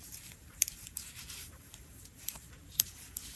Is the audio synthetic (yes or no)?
yes